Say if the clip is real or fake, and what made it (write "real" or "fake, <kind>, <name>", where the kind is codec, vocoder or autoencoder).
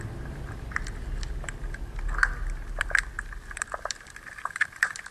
real